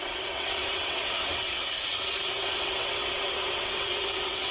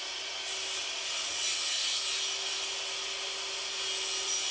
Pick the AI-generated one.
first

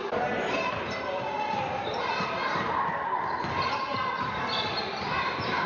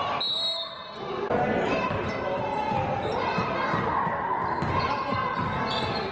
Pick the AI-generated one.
first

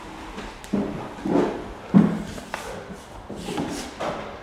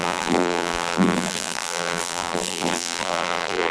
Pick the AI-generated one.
second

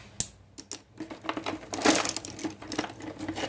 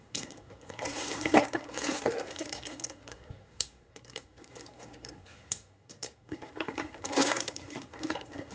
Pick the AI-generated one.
second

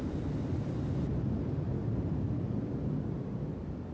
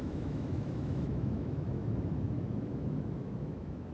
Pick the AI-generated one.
second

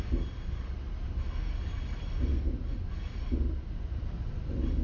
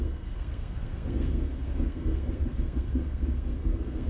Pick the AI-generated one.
second